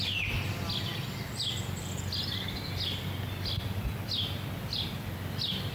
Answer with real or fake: real